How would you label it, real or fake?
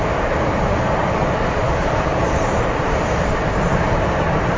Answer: fake